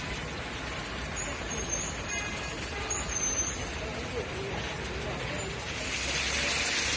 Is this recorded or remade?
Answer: recorded